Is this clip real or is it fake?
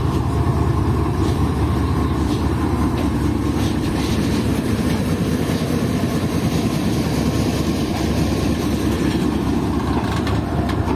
fake